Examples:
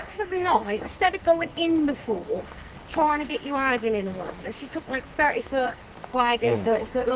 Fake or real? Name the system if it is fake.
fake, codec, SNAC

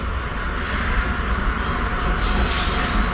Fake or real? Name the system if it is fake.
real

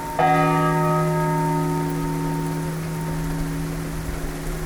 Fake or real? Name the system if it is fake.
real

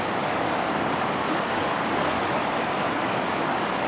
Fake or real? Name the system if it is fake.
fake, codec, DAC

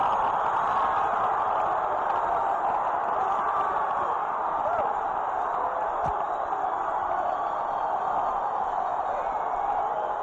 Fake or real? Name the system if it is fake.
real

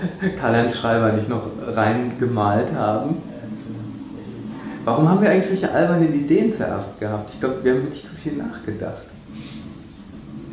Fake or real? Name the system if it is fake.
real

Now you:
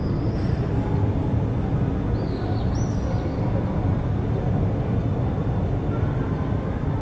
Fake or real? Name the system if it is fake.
real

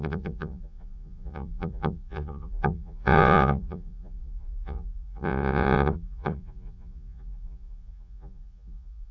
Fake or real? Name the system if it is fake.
fake, vocoder, Vocos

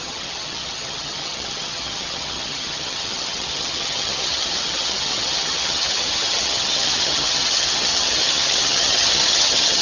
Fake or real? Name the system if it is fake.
fake, vocoder, HiFi-GAN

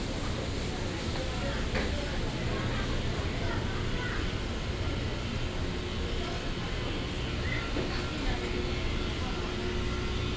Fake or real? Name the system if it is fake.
real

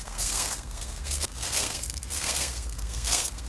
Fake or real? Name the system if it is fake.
fake, codec, SNAC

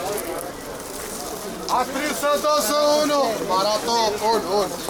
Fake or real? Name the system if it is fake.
real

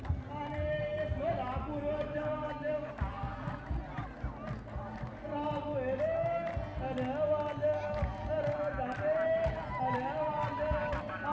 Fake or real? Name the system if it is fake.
real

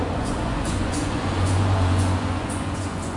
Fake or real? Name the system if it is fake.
fake, vocoder, Vocos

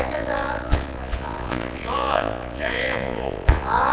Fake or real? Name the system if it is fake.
fake, vocoder, Vocos